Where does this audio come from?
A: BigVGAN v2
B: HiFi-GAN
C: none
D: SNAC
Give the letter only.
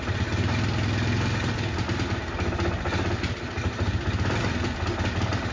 C